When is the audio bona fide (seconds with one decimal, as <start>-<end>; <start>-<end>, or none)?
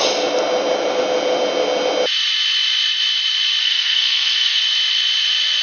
0.0-3.6; 4.6-5.6